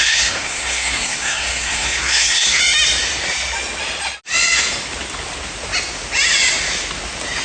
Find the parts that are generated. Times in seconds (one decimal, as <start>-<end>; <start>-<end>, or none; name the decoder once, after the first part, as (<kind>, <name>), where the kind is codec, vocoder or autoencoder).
0.0-2.6 (codec, SNAC)